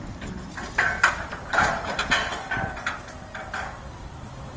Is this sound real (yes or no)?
no